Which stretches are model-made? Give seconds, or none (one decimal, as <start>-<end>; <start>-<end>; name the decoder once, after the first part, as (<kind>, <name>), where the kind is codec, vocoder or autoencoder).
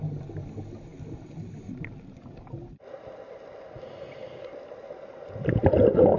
none